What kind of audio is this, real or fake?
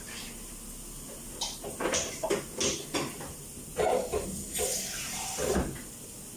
real